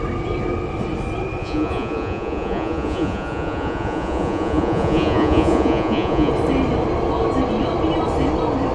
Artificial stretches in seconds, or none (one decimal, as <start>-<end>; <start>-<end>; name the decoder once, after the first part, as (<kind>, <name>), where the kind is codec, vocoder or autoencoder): 1.4-6.3 (vocoder, Vocos)